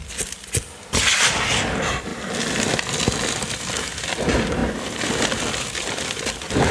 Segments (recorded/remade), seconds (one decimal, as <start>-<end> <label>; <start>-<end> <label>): 0.0-2.1 recorded; 2.1-3.6 remade; 3.6-6.7 recorded